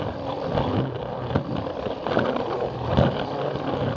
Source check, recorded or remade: recorded